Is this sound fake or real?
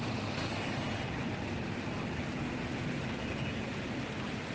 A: real